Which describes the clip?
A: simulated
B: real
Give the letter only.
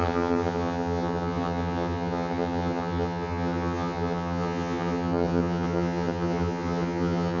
A